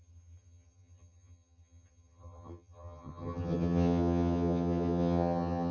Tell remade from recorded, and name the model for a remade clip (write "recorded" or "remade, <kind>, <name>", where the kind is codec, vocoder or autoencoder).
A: remade, vocoder, HiFi-GAN